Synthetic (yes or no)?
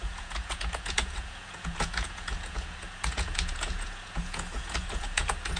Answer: yes